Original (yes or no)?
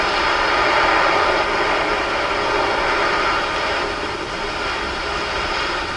yes